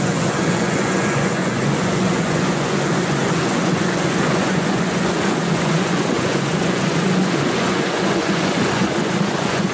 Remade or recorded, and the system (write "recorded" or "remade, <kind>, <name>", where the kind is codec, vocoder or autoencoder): remade, vocoder, Vocos